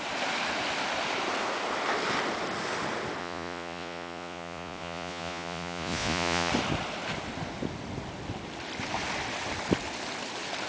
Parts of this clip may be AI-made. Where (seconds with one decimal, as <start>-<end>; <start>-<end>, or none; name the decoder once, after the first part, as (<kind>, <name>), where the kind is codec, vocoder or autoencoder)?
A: 3.2-6.5 (vocoder, Vocos)